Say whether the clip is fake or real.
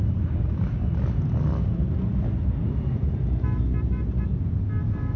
real